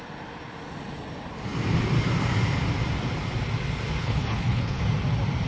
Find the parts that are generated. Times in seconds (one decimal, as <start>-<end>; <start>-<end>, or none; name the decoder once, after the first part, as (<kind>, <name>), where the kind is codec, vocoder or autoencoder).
4.0-4.8 (codec, HILCodec)